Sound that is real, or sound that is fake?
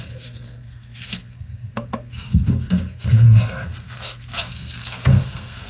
fake